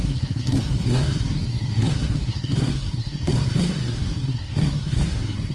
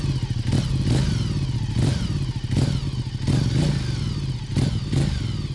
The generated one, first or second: first